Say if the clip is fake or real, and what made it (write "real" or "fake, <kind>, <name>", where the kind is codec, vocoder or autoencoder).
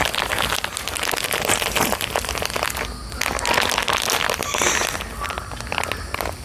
real